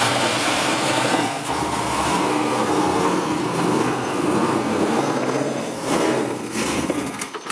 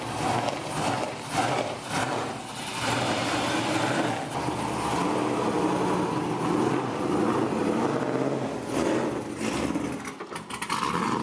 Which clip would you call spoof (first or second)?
first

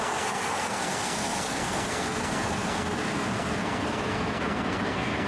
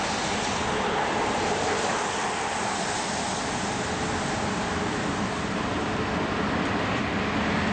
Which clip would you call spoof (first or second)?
first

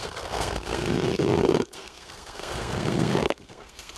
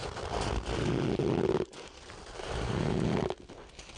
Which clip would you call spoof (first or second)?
first